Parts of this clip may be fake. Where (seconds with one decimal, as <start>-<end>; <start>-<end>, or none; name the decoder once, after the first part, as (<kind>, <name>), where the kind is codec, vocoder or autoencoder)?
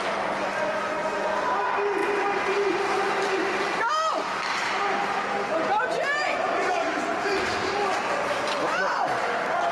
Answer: none